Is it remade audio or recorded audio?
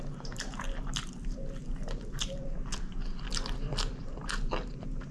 remade